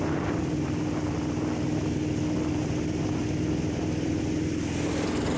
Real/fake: real